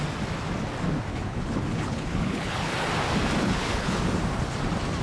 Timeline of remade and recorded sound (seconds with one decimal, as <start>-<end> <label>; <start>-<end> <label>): 0.0-1.1 recorded; 1.1-2.7 remade; 2.7-3.4 recorded; 3.4-4.0 remade; 4.0-5.0 recorded